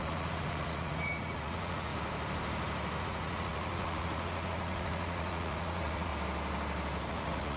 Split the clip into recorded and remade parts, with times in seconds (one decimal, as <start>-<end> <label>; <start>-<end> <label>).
0.0-1.9 remade; 1.9-3.0 recorded; 3.0-6.1 remade; 6.1-7.1 recorded; 7.1-7.6 remade